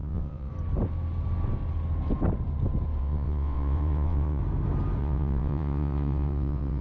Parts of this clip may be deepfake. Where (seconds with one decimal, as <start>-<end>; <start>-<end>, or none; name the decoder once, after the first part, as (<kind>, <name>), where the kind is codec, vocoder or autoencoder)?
0.0-0.5 (vocoder, WaveNeXt); 3.0-4.4; 5.0-6.8